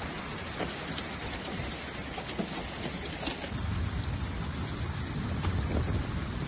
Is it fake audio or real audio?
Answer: real